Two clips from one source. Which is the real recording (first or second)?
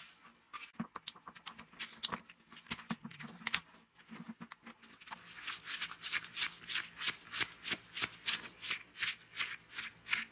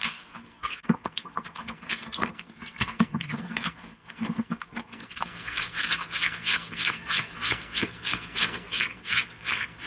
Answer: first